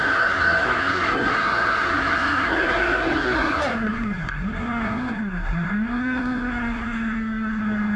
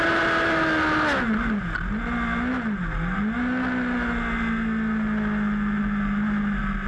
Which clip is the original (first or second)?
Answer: second